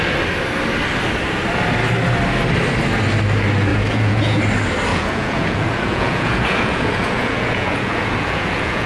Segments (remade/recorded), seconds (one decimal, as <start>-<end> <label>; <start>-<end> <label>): 0.0-3.7 recorded; 3.7-4.4 remade; 4.4-4.9 recorded; 4.9-8.9 remade